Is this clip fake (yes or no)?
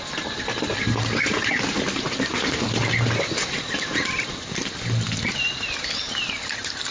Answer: no